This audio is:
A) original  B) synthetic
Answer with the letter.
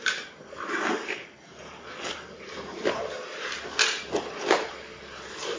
A